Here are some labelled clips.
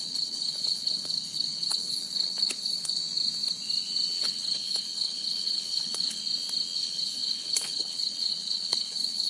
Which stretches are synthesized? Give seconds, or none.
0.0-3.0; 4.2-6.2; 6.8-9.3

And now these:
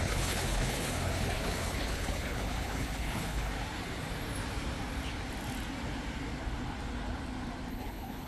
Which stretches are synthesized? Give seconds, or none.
0.0-3.5; 7.7-8.3

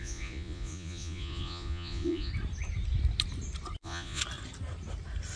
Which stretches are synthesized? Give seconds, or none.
0.0-2.3; 3.8-4.2